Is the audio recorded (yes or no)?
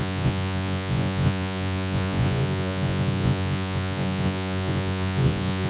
no